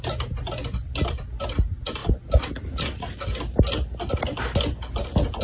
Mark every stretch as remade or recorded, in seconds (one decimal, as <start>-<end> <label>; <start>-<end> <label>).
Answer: 0.0-5.4 recorded